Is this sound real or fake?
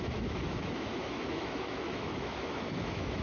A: fake